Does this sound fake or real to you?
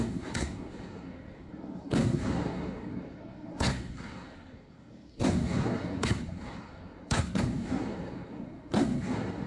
fake